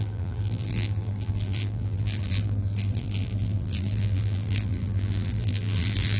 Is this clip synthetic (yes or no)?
yes